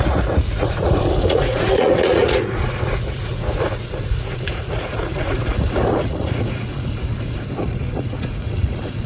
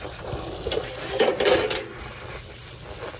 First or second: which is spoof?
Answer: first